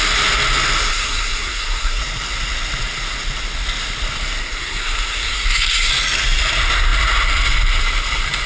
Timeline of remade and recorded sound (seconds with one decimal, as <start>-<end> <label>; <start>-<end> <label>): 0.0-0.9 recorded; 0.9-2.0 remade; 2.0-4.4 recorded; 4.4-5.9 remade; 5.9-8.5 recorded